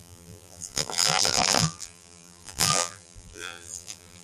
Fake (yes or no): yes